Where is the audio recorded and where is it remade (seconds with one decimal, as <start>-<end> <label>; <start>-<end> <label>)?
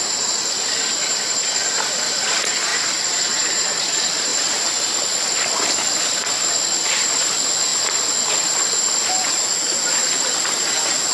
0.0-11.1 recorded